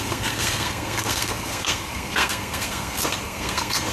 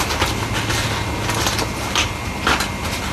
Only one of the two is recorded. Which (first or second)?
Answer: second